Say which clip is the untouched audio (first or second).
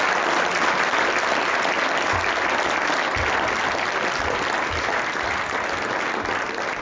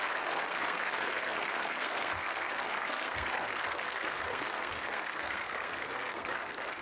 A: first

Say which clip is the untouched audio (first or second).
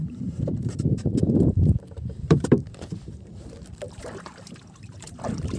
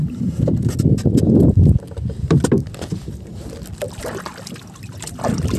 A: second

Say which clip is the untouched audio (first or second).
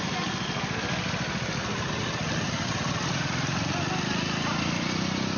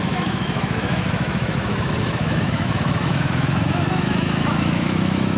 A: first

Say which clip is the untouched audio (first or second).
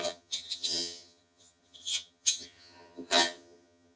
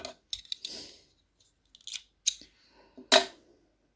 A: second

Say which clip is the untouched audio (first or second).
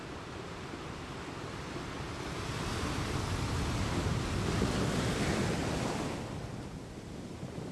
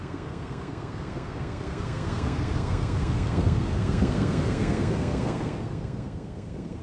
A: first